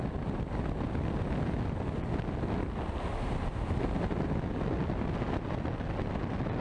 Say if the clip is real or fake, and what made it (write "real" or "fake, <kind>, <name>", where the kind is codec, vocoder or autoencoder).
real